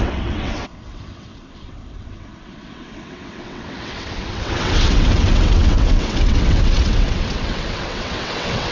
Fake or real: fake